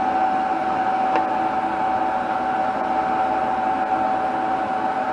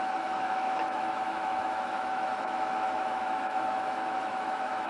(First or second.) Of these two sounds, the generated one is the second